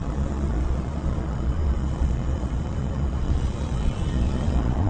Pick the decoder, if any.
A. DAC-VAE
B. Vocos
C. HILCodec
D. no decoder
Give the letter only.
B